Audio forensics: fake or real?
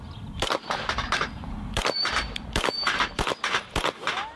fake